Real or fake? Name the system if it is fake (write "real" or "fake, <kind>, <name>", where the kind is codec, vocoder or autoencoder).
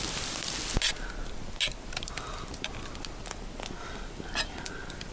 real